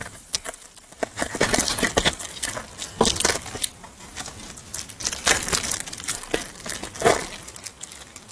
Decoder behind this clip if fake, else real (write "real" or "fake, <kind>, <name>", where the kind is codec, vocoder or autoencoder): real